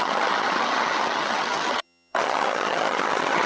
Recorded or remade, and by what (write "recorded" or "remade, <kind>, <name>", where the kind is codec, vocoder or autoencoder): remade, vocoder, HiFi-GAN